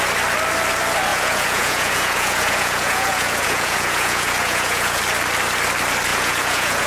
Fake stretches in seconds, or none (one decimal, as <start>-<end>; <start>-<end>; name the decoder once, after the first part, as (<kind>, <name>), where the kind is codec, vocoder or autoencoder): 1.1-5.0 (vocoder, Vocos); 6.1-6.9